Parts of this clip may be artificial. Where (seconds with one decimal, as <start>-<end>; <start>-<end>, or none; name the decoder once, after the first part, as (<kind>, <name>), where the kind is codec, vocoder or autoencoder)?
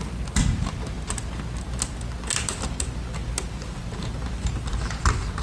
none